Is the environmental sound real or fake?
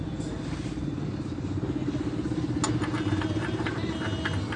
real